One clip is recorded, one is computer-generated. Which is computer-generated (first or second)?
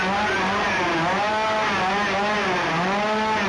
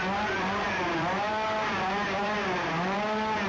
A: second